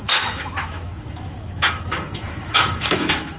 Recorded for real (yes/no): no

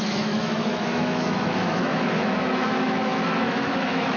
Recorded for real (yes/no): no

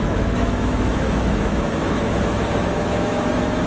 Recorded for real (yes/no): no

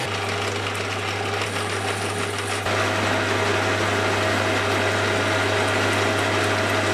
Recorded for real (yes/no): yes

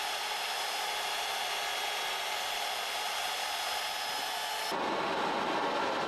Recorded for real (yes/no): yes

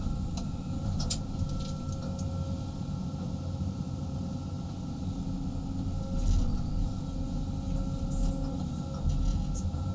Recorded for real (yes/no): yes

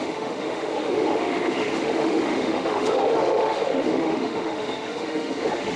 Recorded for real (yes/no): no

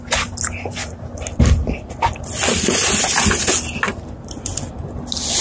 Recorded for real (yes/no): yes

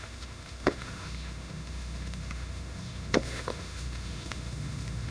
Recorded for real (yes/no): no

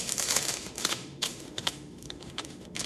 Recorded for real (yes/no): no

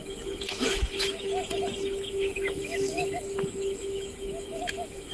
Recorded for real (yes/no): no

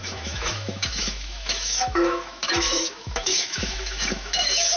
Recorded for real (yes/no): no